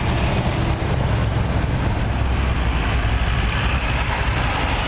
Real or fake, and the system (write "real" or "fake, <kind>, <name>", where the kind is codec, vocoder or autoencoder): real